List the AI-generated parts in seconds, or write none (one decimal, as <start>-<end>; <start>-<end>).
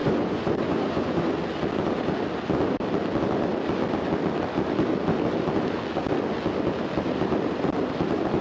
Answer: 0.0-1.2